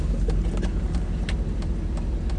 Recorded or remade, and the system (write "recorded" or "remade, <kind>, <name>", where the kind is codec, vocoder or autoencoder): recorded